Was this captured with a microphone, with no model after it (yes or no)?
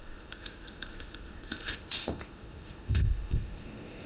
no